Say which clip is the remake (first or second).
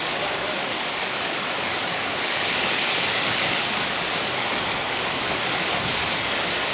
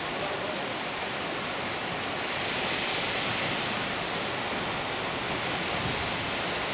first